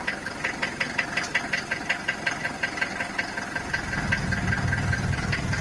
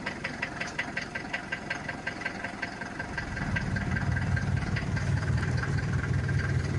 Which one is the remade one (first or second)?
second